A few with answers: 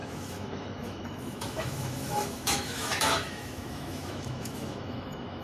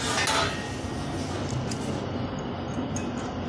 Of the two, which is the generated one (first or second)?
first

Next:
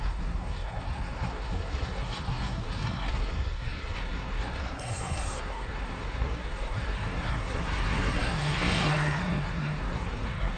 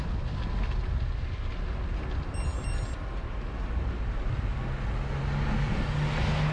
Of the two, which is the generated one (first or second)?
first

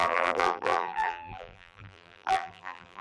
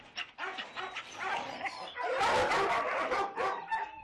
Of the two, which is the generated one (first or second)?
first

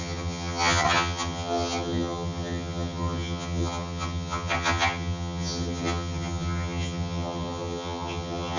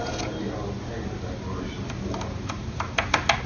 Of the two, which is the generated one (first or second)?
first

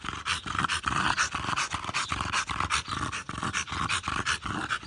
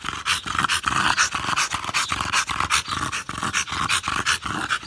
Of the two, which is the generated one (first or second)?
first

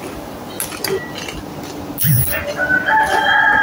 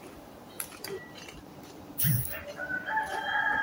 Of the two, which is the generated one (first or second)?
second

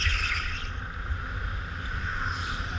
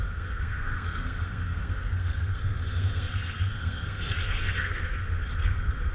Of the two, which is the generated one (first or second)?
second